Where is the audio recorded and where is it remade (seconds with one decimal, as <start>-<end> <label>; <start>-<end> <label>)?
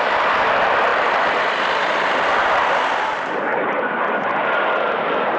0.0-5.4 recorded